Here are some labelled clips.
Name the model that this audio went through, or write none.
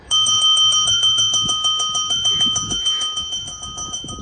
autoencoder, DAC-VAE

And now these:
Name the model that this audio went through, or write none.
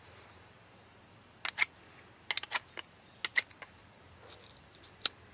none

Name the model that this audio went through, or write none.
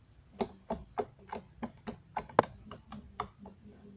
none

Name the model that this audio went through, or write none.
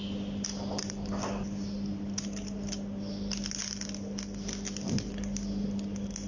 none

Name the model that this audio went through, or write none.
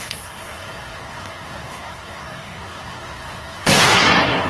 codec, SNAC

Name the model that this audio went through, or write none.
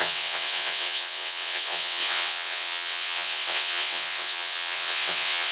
vocoder, WaveNeXt